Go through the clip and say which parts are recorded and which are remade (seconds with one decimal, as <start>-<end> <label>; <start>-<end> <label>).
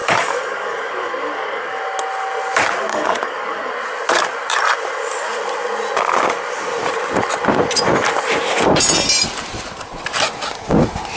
0.0-1.8 remade; 1.8-2.9 recorded; 2.9-3.7 remade; 3.7-11.2 recorded